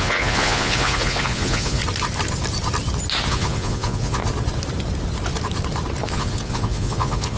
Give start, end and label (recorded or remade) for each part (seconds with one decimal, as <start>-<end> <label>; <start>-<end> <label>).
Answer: 0.0-1.8 remade; 1.8-3.3 recorded; 3.3-4.2 remade; 4.2-6.0 recorded; 6.0-7.4 remade